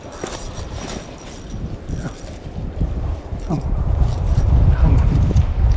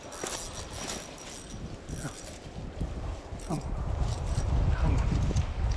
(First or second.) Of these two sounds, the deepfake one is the first